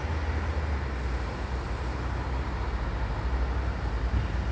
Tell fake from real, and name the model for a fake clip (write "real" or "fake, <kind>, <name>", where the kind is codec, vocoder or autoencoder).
real